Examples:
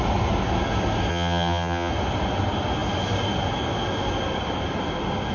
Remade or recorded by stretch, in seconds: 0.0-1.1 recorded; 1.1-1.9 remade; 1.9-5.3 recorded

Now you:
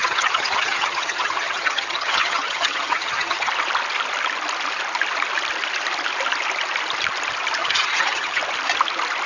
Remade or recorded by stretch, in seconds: 0.0-3.5 remade; 3.5-7.6 recorded; 7.6-8.4 remade; 8.4-9.3 recorded